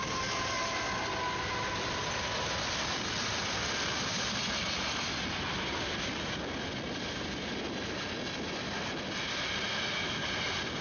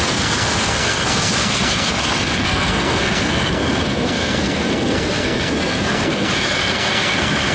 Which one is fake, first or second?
second